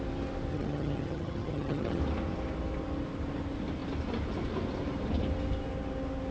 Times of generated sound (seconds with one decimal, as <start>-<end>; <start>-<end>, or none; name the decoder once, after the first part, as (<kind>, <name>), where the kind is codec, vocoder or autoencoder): 0.5-2.0 (vocoder, HiFi-GAN)